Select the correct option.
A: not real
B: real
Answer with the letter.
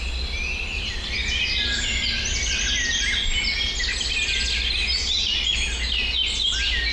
B